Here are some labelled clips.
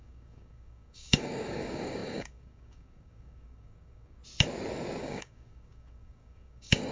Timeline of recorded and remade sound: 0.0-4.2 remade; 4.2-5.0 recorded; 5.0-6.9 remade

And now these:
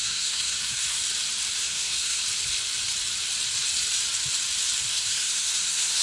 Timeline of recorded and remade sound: 0.0-1.0 remade; 1.0-1.6 recorded; 1.6-2.2 remade; 2.2-4.9 recorded; 4.9-6.0 remade